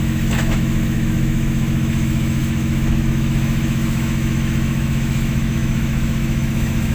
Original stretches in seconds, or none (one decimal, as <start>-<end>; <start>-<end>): none